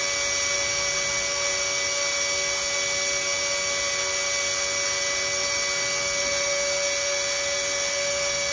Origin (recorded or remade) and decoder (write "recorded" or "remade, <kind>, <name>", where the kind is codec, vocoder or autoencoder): recorded